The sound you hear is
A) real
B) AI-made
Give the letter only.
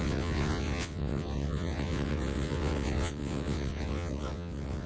B